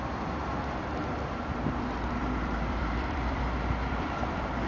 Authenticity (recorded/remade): remade